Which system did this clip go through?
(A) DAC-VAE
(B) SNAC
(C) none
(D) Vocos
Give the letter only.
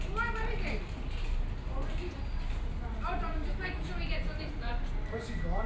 C